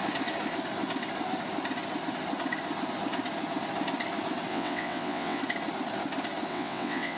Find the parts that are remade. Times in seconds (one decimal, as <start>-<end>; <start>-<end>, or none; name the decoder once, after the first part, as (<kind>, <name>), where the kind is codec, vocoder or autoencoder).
4.5-5.4 (vocoder, WaveNeXt); 6.5-7.2